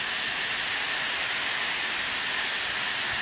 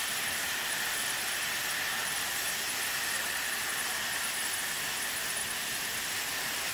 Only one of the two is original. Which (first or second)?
first